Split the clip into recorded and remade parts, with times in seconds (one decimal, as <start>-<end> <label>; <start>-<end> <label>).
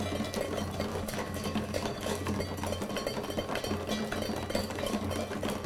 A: 0.0-0.9 recorded; 0.9-2.4 remade; 2.4-4.6 recorded; 4.6-5.1 remade; 5.1-5.7 recorded